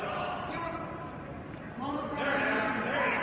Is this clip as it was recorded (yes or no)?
no